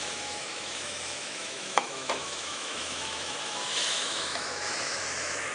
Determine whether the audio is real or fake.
fake